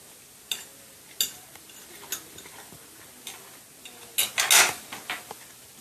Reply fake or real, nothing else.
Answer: real